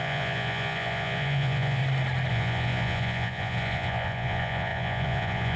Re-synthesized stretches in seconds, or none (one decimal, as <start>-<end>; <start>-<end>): 0.0-1.8; 2.3-5.6